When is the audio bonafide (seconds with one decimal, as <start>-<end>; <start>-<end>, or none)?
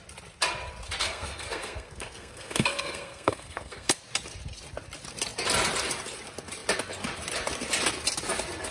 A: 0.0-1.0; 4.0-8.7